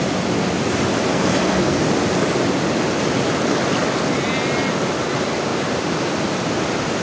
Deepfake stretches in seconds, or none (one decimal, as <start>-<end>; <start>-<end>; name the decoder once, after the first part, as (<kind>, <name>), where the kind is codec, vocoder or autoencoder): 1.1-1.8 (codec, SNAC)